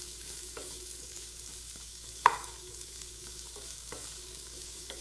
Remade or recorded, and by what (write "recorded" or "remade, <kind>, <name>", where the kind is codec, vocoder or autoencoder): remade, codec, DAC